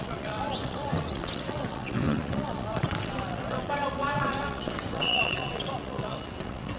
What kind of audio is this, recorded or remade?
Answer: remade